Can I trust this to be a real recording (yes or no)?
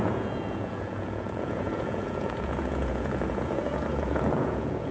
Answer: no